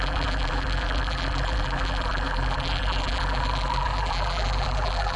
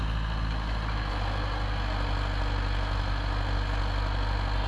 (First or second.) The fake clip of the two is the first